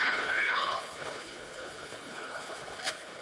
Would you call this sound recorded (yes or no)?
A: no